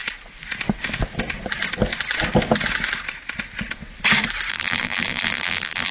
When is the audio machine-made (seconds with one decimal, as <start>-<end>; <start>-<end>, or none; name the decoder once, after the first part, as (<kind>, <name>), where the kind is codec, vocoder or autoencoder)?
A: 4.5-5.9 (vocoder, BigVGAN v2)